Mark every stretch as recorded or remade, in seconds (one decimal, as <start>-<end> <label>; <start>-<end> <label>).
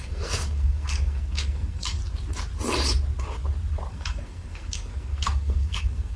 0.0-2.0 remade; 2.0-3.9 recorded; 3.9-6.2 remade